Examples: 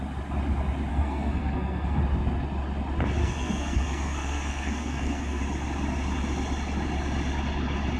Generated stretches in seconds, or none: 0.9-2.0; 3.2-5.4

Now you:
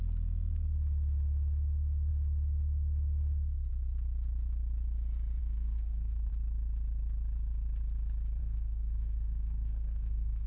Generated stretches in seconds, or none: 5.4-6.3; 8.4-10.5

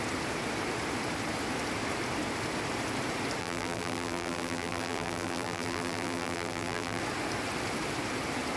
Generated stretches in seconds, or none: 3.4-7.0

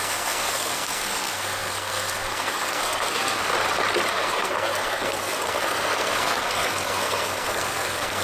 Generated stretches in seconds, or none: 0.0-3.5; 4.1-8.2

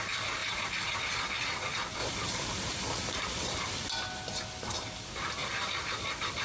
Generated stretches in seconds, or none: 0.4-1.2; 2.0-3.9

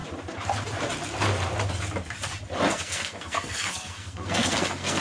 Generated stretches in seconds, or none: 2.7-5.0